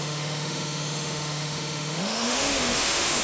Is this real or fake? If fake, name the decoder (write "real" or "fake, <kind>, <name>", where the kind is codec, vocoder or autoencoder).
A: fake, autoencoder, DAC-VAE